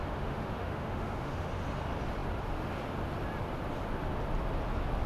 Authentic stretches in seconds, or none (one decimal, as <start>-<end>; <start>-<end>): 1.5-5.1